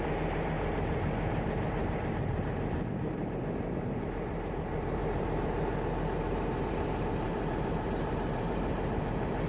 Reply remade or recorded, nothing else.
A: remade